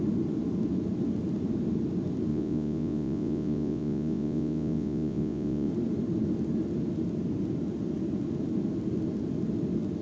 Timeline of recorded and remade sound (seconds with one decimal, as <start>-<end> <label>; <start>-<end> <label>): 0.0-2.3 recorded; 2.3-5.7 remade; 5.7-10.0 recorded